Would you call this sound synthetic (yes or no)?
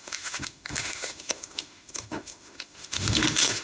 yes